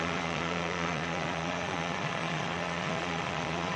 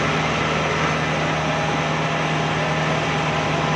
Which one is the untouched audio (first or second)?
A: second